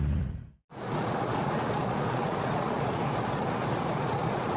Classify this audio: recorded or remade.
remade